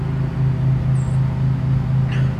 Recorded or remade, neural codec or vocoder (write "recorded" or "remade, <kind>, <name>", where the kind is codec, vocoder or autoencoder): recorded